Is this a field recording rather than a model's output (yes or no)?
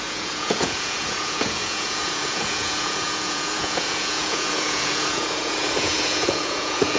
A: no